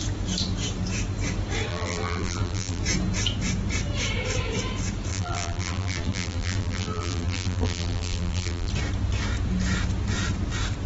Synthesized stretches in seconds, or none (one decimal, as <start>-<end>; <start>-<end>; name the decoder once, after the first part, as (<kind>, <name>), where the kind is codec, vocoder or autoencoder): 1.7-2.8 (vocoder, BigVGAN v2); 5.1-8.7